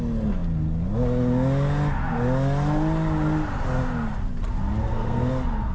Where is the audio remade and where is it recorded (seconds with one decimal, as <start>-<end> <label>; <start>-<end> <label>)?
0.0-4.8 recorded; 4.8-5.3 remade; 5.3-5.7 recorded

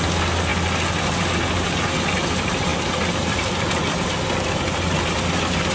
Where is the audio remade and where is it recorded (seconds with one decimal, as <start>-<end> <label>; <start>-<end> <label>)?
0.0-5.7 recorded

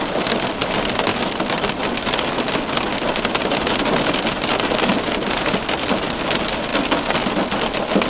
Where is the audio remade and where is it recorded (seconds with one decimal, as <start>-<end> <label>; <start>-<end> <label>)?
0.0-8.1 recorded

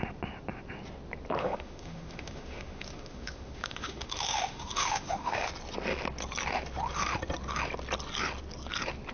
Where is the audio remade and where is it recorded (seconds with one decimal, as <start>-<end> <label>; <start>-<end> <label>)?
0.0-1.4 recorded; 1.4-5.5 remade; 5.5-9.1 recorded

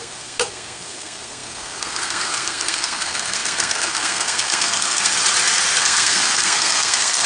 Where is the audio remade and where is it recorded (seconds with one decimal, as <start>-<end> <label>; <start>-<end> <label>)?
0.0-5.1 remade; 5.1-5.8 recorded; 5.8-7.3 remade

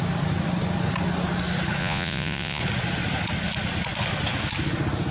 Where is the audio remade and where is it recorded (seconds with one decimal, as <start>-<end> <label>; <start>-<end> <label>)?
0.0-1.8 recorded; 1.8-2.6 remade; 2.6-5.1 recorded